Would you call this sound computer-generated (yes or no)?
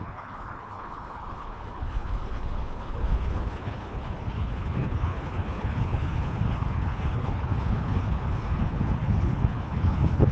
yes